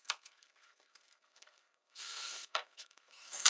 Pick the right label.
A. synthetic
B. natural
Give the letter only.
A